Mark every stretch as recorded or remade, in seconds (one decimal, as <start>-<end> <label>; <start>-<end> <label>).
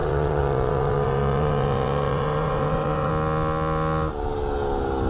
0.0-3.1 remade; 3.1-5.1 recorded